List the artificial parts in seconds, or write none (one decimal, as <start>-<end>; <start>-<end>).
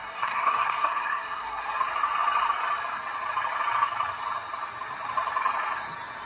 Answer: 0.0-1.8